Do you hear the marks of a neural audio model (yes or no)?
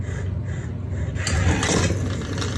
no